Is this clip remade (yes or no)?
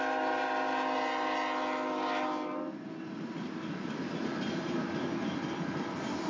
no